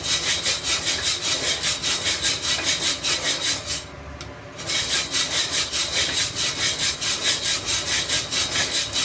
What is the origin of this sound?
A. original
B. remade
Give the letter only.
A